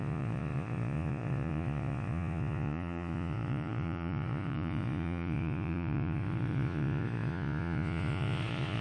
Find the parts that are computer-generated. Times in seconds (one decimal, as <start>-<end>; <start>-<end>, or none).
0.0-8.8